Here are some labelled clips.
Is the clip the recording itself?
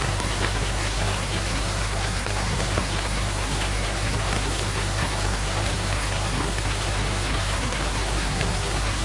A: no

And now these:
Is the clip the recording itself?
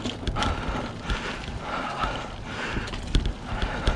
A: yes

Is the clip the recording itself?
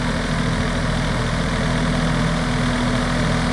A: yes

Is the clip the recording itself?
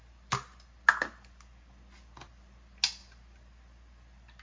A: yes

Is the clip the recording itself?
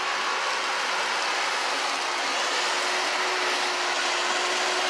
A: yes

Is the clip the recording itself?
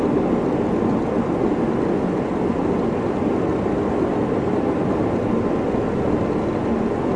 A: yes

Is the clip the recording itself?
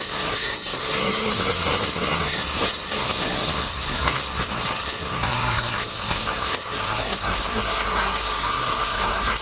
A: no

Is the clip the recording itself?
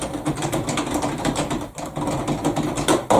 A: yes